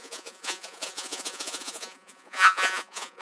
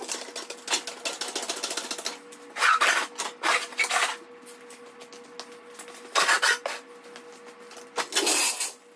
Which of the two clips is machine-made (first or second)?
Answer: first